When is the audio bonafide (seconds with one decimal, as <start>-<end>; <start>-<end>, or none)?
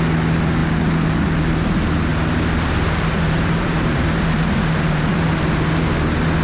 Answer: 0.0-2.1; 5.3-6.4